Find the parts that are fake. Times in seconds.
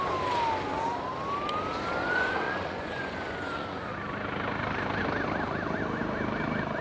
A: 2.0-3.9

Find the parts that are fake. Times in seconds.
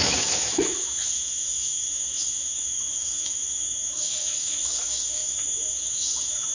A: 0.0-6.5